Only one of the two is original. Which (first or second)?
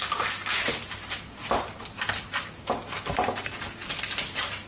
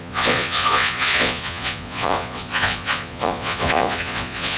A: first